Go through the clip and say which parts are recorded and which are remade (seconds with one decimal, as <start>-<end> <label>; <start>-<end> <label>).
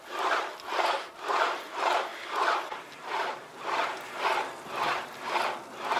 0.0-2.1 recorded; 2.1-4.2 remade; 4.2-6.0 recorded